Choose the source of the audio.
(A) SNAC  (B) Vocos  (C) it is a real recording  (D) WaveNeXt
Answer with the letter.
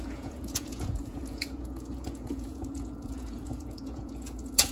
B